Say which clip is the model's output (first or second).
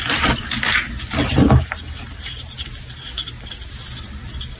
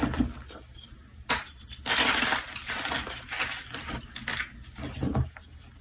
first